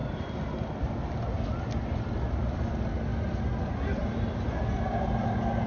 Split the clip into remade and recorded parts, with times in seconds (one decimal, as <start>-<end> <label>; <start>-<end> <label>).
0.0-5.7 recorded